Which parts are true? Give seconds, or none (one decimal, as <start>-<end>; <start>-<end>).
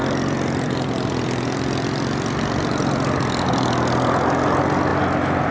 3.3-5.5